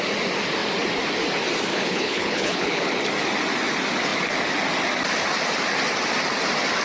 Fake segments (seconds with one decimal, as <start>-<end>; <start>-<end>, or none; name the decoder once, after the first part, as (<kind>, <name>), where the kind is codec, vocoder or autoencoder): 1.7-2.9 (codec, HILCodec)